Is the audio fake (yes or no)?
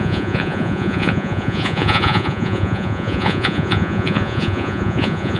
yes